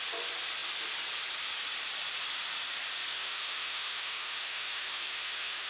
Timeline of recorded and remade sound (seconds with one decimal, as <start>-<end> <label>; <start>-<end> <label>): 0.0-3.1 recorded; 3.1-5.7 remade